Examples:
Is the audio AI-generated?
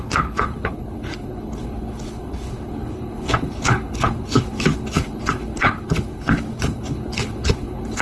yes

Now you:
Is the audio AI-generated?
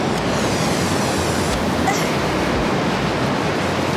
no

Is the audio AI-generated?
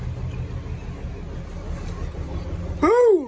no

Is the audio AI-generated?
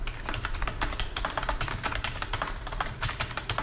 yes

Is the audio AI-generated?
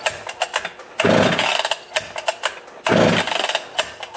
no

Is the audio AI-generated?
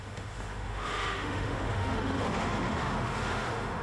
yes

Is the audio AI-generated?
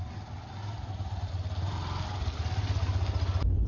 no